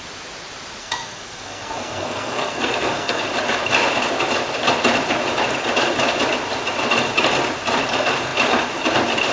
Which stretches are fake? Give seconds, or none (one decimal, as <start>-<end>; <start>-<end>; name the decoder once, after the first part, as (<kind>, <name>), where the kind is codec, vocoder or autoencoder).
0.8-3.2 (codec, SNAC)